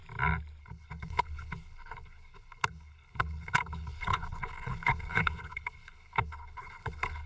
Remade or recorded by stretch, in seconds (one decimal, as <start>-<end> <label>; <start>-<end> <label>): 0.0-0.6 recorded; 0.6-7.3 remade